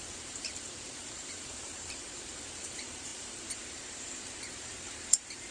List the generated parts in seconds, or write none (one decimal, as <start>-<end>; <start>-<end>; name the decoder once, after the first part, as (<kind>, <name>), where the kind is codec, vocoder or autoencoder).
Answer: 0.0-5.5 (vocoder, BigVGAN v2)